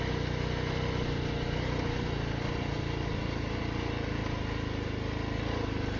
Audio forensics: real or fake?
real